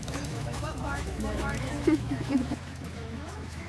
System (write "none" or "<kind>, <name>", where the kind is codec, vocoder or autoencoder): autoencoder, DAC-VAE